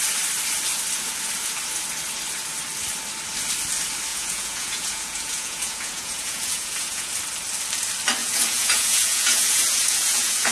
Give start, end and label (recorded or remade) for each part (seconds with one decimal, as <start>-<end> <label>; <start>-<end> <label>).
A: 0.0-4.1 recorded; 4.1-7.1 remade; 7.1-8.2 recorded; 8.2-10.5 remade